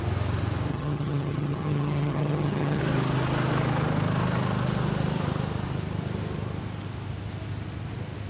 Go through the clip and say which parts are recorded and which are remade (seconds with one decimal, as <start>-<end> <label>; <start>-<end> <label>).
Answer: 0.0-0.7 recorded; 0.7-2.8 remade; 2.8-8.3 recorded